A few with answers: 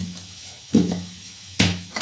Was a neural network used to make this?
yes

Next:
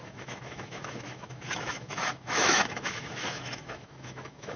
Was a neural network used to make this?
yes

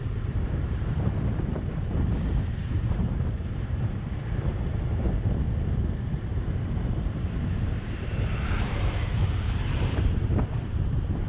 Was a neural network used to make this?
yes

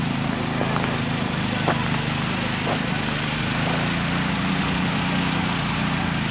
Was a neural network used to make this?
no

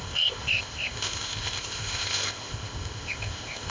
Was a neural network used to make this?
yes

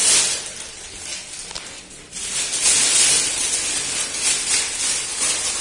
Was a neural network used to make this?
no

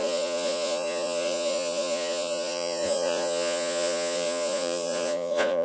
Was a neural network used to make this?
yes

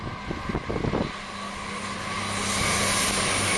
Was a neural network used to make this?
no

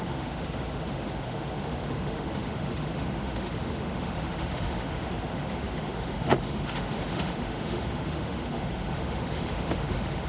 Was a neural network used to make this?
yes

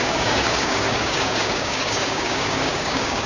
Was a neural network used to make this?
yes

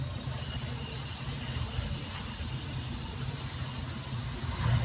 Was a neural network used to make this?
no